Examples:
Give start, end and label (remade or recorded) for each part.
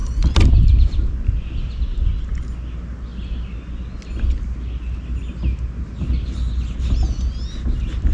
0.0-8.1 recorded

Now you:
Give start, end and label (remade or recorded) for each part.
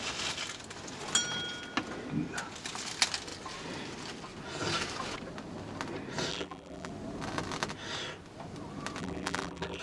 0.0-6.3 recorded; 6.3-6.9 remade; 6.9-9.0 recorded; 9.0-9.8 remade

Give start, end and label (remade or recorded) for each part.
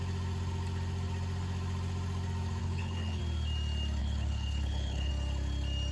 0.0-2.6 recorded; 2.6-3.2 remade; 3.2-4.0 recorded; 4.0-5.1 remade; 5.1-5.9 recorded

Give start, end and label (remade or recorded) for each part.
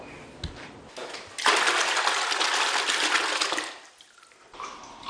0.0-5.1 recorded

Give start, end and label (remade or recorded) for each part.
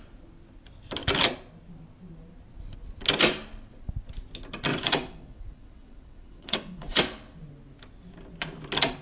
0.0-4.7 recorded; 4.7-7.0 remade; 7.0-9.0 recorded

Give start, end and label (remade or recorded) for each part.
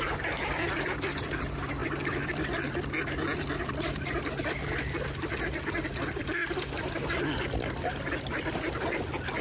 0.0-6.4 remade; 6.4-8.2 recorded; 8.2-9.4 remade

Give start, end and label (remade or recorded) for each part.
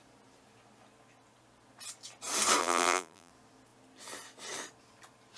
0.0-2.6 recorded; 2.6-3.3 remade; 3.3-5.4 recorded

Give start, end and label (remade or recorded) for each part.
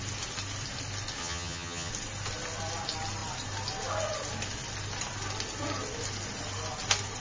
0.0-1.2 recorded; 1.2-1.9 remade; 1.9-7.2 recorded